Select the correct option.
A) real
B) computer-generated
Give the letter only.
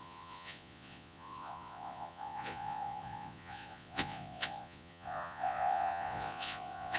B